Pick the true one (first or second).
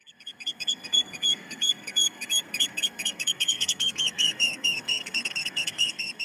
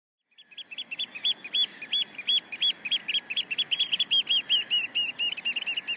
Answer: second